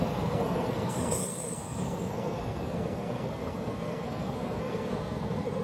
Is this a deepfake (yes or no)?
yes